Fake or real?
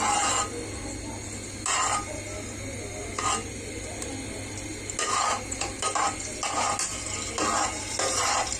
real